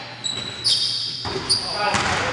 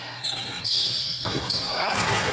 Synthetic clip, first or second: second